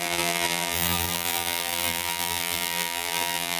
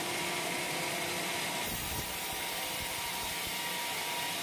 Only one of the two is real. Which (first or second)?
second